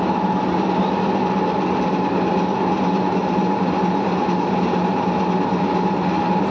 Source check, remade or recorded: recorded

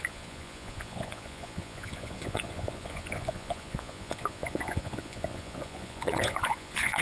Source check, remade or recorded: remade